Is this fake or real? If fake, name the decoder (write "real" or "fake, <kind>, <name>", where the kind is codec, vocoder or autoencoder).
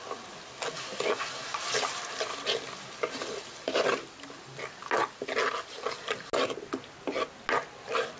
real